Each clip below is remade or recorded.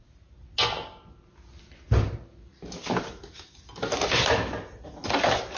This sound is recorded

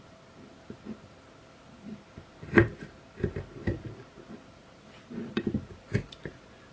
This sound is recorded